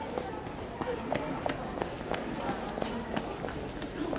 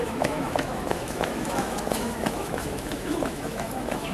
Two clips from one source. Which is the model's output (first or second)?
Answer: second